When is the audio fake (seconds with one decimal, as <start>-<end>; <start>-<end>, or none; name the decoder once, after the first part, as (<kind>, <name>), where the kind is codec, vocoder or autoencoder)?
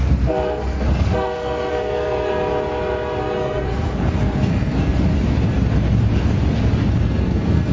0.0-2.3 (codec, SNAC); 3.2-5.1; 7.0-7.7